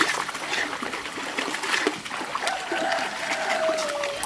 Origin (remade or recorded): recorded